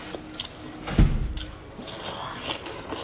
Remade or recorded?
recorded